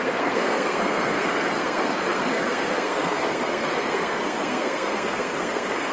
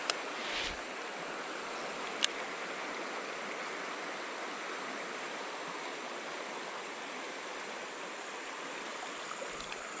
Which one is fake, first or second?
first